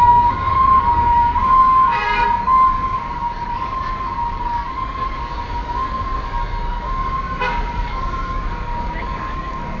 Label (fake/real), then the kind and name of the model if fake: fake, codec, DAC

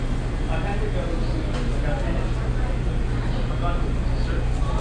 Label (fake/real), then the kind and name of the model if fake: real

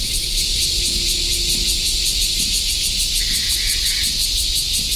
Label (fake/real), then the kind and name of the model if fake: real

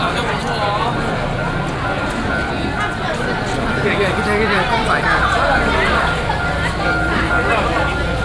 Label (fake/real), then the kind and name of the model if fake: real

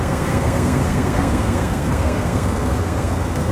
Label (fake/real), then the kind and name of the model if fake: fake, codec, SNAC